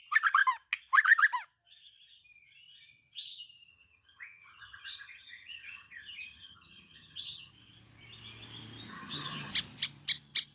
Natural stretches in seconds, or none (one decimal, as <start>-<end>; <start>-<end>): 0.0-3.7; 7.5-8.9; 9.5-10.5